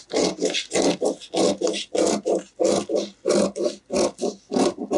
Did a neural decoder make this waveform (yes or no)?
no